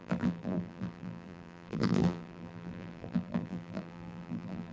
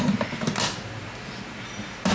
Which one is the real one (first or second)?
second